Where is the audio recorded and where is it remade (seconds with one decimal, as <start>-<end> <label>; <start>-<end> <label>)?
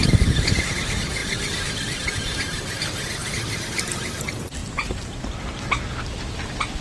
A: 0.0-1.2 recorded; 1.2-2.0 remade; 2.0-6.8 recorded